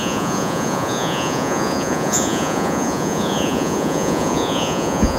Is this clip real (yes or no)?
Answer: no